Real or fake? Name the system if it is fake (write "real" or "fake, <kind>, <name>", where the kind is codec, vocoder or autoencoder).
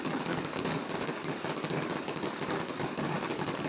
fake, codec, DAC